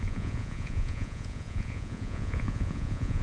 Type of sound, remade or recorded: remade